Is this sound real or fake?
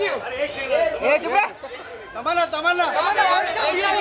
real